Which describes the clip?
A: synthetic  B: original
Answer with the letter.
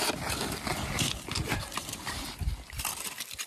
A